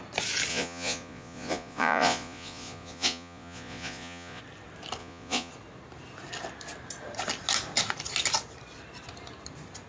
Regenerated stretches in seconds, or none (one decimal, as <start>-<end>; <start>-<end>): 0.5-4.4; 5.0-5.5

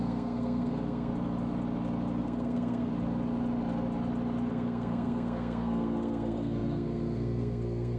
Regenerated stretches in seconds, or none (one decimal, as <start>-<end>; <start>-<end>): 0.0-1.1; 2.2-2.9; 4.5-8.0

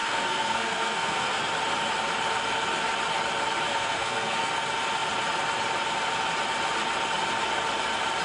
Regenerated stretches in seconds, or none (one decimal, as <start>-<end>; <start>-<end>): 0.0-1.5; 3.7-4.5

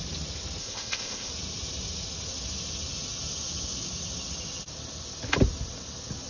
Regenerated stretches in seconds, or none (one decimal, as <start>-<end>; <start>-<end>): 0.6-1.3

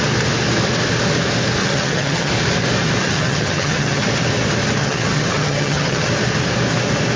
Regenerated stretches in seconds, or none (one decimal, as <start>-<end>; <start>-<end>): 1.6-2.3; 3.0-4.1; 4.8-6.1

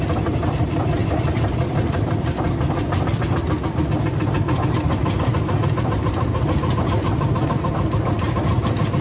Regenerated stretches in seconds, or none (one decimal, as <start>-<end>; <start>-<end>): none

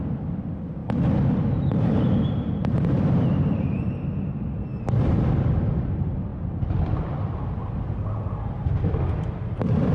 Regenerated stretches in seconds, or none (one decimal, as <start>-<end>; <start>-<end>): 0.0-0.8; 2.0-4.7; 5.2-6.3; 8.5-9.9

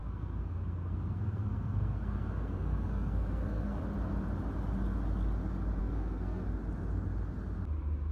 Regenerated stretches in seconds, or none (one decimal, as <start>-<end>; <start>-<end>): 0.0-3.8; 5.8-6.4